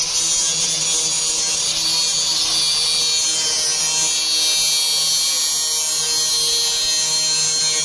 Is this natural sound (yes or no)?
yes